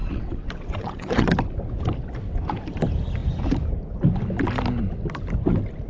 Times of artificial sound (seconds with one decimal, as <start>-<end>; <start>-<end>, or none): 0.0-1.3